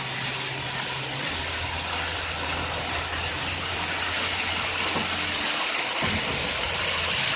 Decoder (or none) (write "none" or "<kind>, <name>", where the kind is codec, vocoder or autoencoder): none